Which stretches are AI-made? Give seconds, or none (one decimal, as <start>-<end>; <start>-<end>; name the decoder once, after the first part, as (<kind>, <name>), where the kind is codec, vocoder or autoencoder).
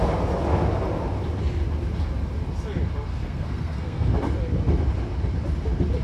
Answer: 3.1-4.1 (codec, SNAC)